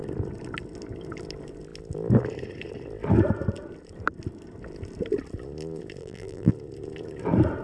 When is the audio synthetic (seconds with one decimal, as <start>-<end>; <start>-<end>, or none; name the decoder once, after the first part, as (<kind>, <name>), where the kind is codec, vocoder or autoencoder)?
6.0-6.5 (vocoder, BigVGAN v2)